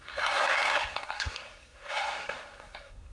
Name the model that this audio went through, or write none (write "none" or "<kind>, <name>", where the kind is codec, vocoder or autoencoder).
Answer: codec, SNAC